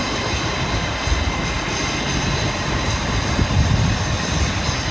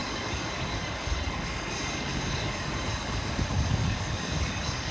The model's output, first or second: second